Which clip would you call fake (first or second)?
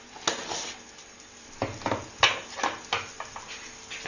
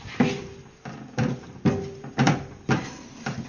second